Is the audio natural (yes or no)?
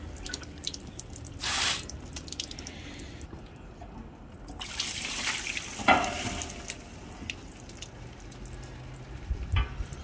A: yes